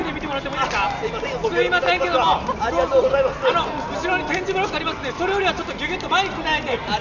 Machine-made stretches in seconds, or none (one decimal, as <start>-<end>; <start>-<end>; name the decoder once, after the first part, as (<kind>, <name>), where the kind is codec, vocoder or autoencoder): none